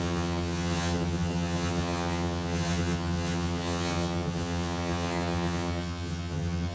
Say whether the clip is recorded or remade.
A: remade